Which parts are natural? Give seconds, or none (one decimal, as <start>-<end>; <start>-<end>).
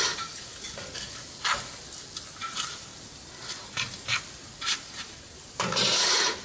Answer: 0.5-2.5; 2.9-4.6